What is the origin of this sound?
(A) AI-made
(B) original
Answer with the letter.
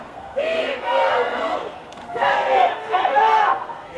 A